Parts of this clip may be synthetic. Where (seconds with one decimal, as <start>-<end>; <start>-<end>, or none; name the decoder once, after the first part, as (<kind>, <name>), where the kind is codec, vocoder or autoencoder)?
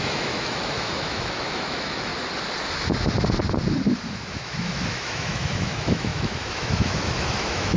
0.0-2.1 (autoencoder, DAC-VAE); 4.1-7.8